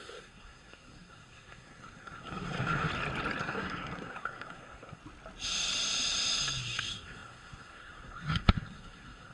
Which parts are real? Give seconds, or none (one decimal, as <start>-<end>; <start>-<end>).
2.9-3.4; 5.0-6.6

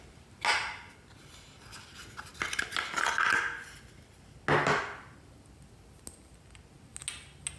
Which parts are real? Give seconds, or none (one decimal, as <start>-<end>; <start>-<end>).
0.0-7.6

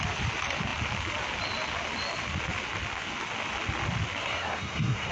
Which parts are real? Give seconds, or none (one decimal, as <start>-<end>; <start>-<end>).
0.0-4.2

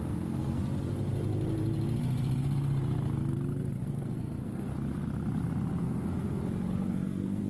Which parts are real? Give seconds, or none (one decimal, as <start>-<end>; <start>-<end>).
0.6-3.8; 4.7-5.8; 6.4-6.9

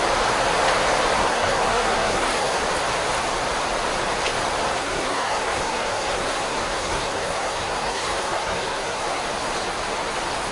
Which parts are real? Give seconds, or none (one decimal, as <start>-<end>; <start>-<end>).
0.0-1.2; 2.6-4.8; 9.2-10.5

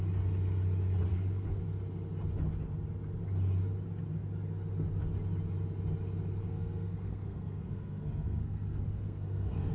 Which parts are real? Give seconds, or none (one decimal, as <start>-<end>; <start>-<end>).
0.0-1.1; 1.6-6.4

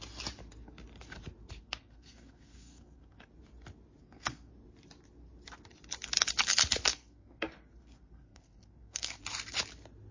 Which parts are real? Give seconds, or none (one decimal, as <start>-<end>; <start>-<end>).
0.0-1.6; 3.3-4.0; 4.5-6.9; 9.2-10.1

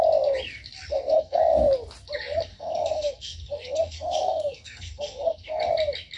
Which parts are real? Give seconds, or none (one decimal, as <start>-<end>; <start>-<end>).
0.0-0.9; 1.4-2.5; 5.6-6.2